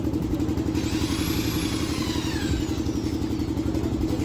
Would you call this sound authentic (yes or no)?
yes